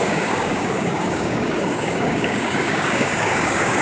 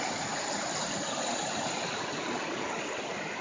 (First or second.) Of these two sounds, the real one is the second